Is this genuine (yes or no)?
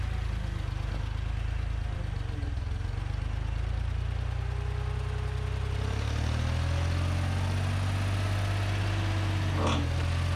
yes